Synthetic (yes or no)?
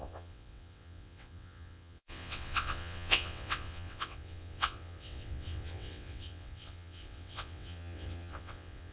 yes